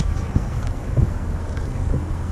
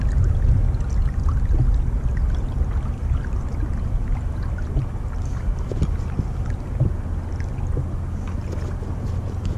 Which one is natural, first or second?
second